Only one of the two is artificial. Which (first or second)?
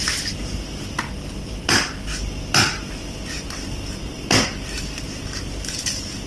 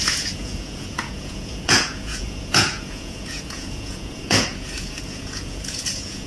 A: second